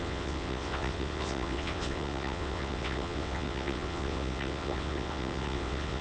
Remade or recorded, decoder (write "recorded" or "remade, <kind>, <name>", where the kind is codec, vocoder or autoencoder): remade, vocoder, WaveNeXt